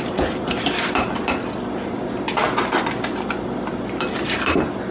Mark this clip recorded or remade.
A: recorded